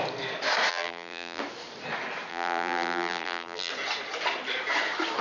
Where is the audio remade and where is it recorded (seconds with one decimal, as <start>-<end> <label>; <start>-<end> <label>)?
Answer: 0.0-0.7 recorded; 0.7-1.4 remade; 1.4-2.3 recorded; 2.3-3.7 remade; 3.7-5.2 recorded